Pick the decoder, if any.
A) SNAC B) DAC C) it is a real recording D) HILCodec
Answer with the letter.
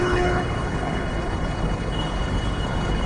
D